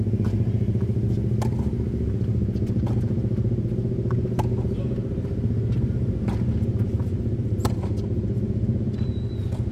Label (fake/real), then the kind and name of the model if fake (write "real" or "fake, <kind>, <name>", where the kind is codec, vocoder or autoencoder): real